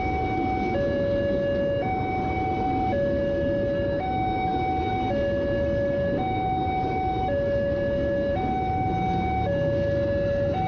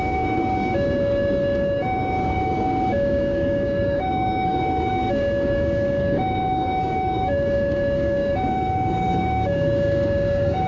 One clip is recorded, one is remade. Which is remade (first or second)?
second